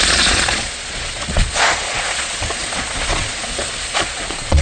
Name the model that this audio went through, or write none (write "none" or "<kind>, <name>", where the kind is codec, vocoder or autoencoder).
vocoder, Vocos